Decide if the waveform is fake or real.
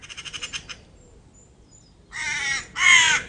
fake